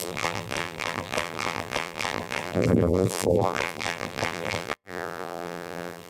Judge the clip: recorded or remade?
remade